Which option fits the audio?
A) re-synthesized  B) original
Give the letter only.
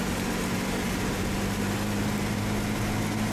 B